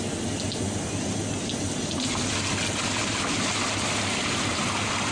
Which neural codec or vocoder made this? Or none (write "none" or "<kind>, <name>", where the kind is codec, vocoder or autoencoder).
none